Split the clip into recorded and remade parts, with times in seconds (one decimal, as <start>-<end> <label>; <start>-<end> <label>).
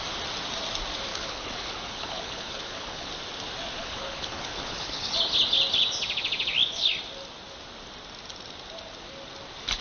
0.0-1.1 recorded; 1.1-3.1 remade; 3.1-3.8 recorded; 3.8-5.1 remade; 5.1-9.8 recorded